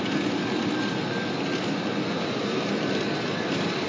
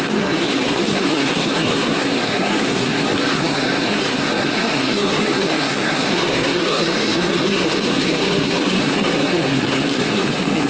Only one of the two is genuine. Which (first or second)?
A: first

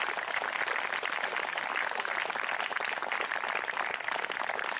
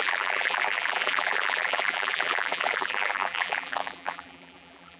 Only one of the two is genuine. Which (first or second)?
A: first